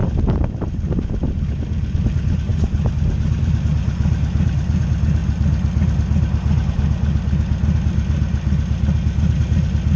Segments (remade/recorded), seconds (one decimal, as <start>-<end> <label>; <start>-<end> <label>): 0.0-10.0 recorded